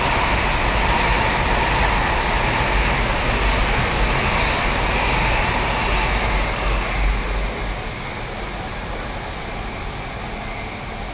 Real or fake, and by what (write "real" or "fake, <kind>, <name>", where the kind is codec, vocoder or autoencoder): real